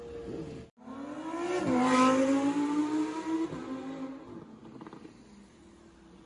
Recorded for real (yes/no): yes